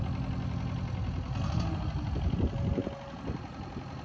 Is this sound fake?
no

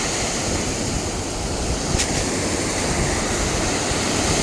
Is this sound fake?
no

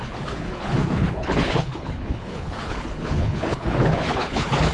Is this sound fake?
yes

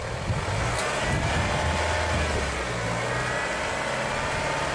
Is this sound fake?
no